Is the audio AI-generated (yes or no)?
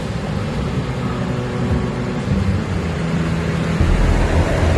no